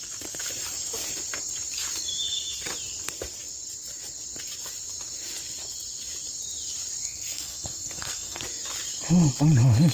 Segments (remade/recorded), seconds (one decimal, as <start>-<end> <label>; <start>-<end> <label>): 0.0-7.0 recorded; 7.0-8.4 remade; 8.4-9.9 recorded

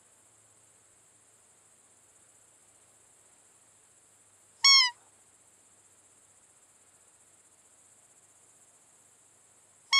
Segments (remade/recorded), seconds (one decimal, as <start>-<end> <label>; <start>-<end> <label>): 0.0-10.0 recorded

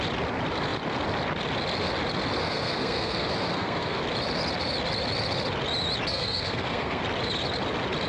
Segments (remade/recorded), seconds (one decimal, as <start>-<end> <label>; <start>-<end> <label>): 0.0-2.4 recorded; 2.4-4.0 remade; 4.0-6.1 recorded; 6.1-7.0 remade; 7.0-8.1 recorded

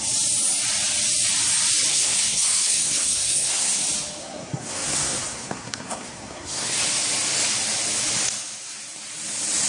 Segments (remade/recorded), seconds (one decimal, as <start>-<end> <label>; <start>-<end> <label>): 0.0-1.9 recorded; 1.9-3.8 remade; 3.8-4.2 recorded; 4.2-6.8 remade; 6.8-9.7 recorded